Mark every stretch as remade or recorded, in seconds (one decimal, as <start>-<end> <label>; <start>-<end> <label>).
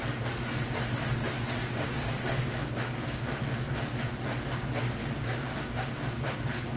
0.0-1.6 recorded; 1.6-3.4 remade; 3.4-5.0 recorded; 5.0-6.0 remade; 6.0-6.8 recorded